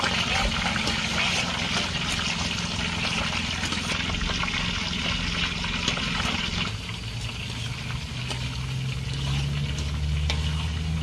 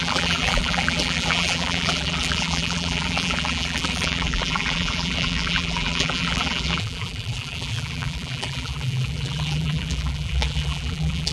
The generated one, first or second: second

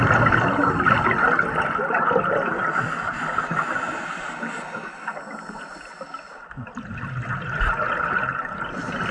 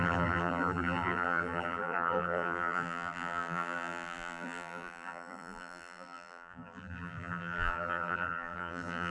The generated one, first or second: second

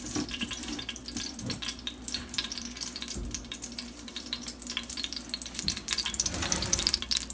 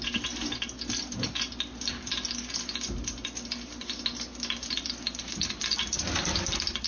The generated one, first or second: first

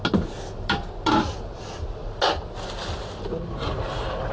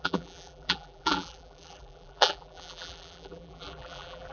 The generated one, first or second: second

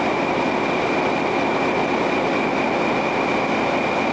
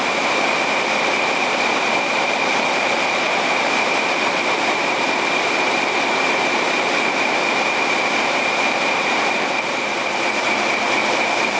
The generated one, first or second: second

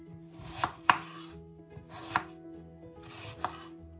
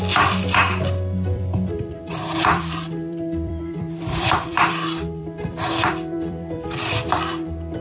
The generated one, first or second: second